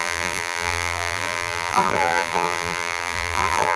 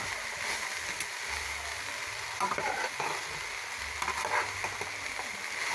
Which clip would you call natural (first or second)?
second